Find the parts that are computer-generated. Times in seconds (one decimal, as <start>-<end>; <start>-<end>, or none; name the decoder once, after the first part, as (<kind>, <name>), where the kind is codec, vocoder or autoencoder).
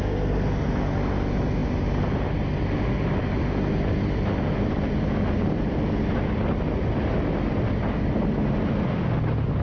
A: none